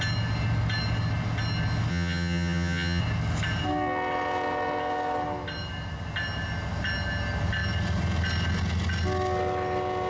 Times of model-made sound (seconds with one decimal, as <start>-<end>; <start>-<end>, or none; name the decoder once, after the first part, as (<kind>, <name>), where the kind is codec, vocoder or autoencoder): 1.9-3.0 (vocoder, HiFi-GAN)